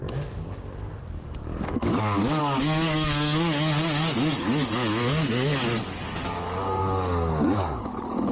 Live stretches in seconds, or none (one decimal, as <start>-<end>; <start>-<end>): 0.0-0.9